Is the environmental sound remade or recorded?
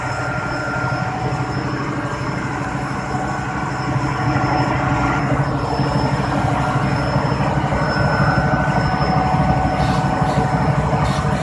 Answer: recorded